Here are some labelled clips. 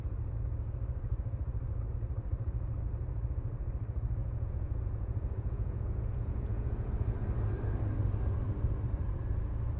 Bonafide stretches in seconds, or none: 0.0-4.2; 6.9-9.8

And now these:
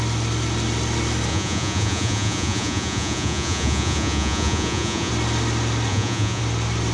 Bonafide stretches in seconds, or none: 0.0-1.3; 5.1-5.9; 6.4-6.9

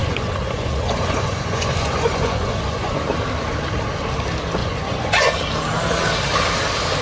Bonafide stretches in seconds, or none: 3.0-4.6; 5.3-7.0

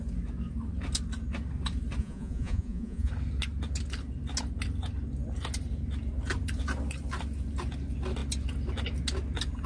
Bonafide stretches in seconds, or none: 0.0-2.0; 3.1-9.7